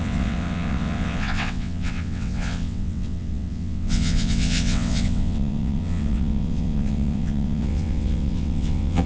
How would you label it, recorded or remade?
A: remade